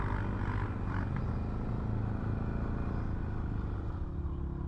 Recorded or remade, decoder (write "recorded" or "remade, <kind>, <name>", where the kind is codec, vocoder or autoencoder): recorded